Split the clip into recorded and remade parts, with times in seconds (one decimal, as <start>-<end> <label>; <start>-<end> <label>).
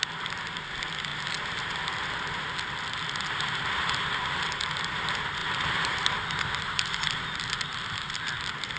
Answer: 0.0-8.8 recorded